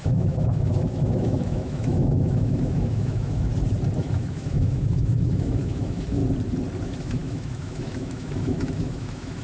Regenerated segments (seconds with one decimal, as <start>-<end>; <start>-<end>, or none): 0.0-3.5; 4.0-6.2; 6.8-9.4